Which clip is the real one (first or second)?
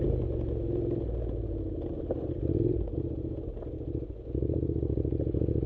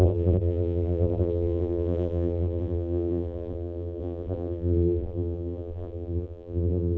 first